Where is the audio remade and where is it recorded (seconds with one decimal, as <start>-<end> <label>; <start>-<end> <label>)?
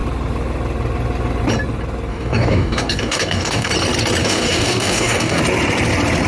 0.0-2.1 recorded; 2.1-3.7 remade; 3.7-4.2 recorded; 4.2-5.4 remade; 5.4-6.3 recorded